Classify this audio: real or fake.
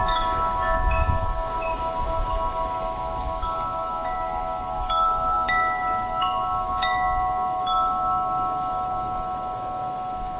fake